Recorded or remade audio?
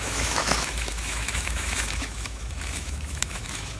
remade